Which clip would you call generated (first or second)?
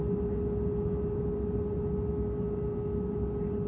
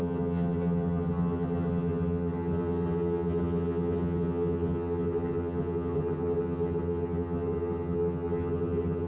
second